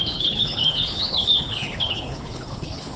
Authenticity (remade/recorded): remade